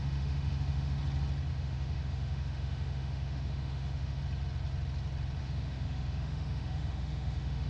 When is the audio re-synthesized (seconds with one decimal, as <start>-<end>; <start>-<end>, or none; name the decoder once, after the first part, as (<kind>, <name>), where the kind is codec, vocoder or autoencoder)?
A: 0.0-1.0 (autoencoder, DAC-VAE); 1.5-4.2; 5.4-7.7